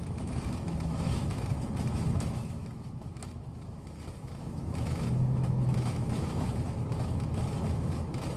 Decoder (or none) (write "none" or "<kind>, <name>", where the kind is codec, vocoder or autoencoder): autoencoder, DAC-VAE